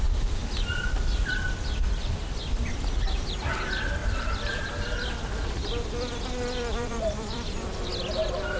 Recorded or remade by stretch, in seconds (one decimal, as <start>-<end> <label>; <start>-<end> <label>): 0.0-4.0 recorded; 4.0-4.6 remade; 4.6-6.7 recorded; 6.7-7.9 remade; 7.9-8.6 recorded